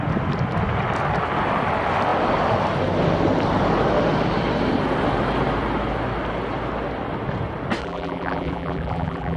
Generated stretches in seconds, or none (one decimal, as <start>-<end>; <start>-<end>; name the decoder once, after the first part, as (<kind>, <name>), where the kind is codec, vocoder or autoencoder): 7.8-9.4 (vocoder, BigVGAN v2)

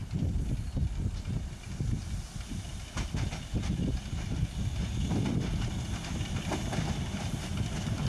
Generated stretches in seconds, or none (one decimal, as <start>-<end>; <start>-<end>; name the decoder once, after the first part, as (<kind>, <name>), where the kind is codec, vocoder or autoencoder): none

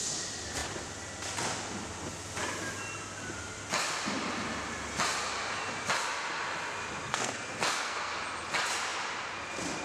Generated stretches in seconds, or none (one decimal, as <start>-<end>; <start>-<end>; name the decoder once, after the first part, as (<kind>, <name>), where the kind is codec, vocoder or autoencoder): 7.1-8.1 (codec, SNAC)